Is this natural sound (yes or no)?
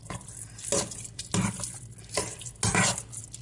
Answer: yes